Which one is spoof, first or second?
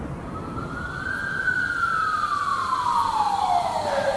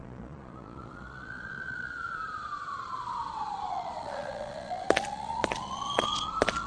second